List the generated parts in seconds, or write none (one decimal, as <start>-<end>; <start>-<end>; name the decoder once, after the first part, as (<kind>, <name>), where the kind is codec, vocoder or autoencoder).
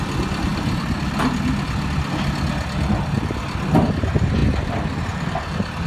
none